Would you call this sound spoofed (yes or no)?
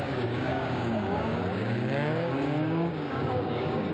yes